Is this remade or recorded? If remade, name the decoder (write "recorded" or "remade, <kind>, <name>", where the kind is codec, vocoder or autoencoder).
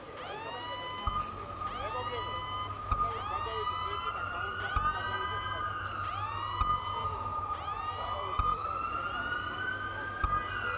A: recorded